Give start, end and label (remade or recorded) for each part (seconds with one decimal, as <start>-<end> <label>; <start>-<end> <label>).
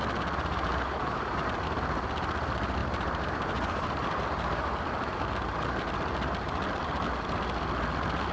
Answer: 0.0-0.7 recorded; 0.7-1.7 remade; 1.7-2.8 recorded; 2.8-5.8 remade; 5.8-8.3 recorded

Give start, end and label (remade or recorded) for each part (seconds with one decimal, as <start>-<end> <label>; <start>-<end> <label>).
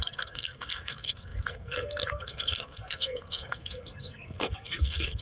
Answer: 0.0-5.2 remade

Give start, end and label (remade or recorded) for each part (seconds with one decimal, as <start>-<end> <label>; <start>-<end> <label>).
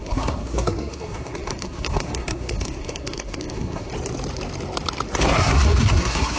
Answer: 0.0-3.9 remade; 3.9-5.2 recorded; 5.2-6.4 remade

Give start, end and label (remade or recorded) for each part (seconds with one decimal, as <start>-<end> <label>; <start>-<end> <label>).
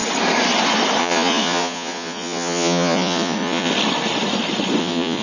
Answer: 0.0-1.0 recorded; 1.0-3.7 remade; 3.7-4.8 recorded; 4.8-5.2 remade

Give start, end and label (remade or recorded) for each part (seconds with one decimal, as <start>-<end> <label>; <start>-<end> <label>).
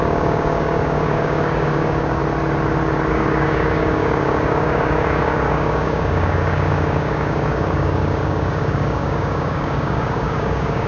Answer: 0.0-2.2 remade; 2.2-3.1 recorded; 3.1-10.9 remade